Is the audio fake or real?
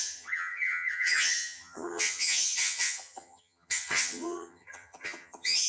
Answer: fake